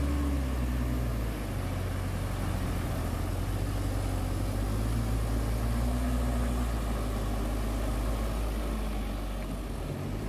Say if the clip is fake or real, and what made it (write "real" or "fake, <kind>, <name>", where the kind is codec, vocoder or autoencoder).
real